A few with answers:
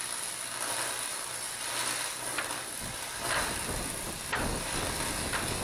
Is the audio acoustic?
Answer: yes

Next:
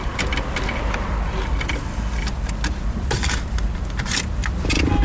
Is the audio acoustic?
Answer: yes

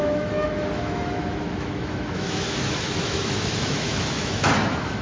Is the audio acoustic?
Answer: no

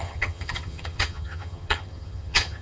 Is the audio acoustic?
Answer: no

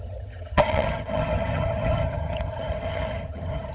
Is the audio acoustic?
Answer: no